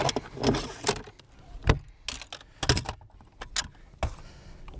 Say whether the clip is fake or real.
real